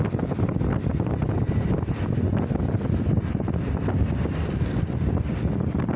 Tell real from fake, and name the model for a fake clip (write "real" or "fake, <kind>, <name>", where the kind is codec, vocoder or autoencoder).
real